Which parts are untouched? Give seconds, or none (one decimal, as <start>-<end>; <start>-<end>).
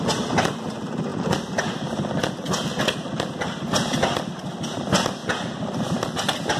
0.0-6.6